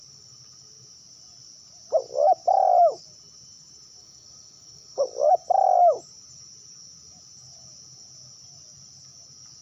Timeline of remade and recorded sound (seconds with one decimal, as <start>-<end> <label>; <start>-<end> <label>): 0.0-4.0 recorded; 4.0-5.3 remade; 5.3-9.6 recorded